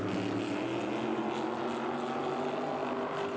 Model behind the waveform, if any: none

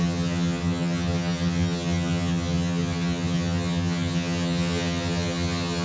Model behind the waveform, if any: vocoder, HiFi-GAN